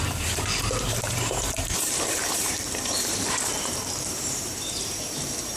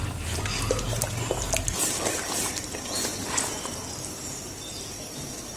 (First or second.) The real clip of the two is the second